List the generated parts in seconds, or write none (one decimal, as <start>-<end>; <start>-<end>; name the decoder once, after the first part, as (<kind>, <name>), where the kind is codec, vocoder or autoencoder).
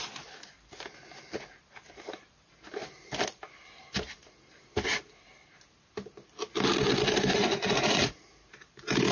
7.3-8.2 (vocoder, Vocos)